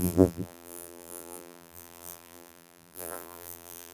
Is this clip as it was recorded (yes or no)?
no